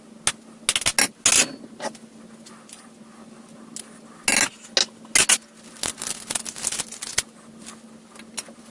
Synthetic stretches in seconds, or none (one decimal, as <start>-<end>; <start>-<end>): none